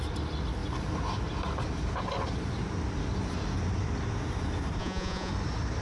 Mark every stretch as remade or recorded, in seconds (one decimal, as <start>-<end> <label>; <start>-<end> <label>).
0.0-4.8 recorded; 4.8-5.3 remade; 5.3-5.8 recorded